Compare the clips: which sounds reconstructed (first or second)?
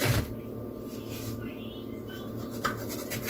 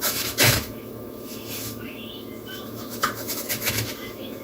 second